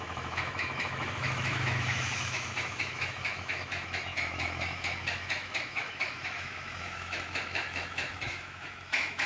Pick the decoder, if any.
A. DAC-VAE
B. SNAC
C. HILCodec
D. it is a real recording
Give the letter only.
A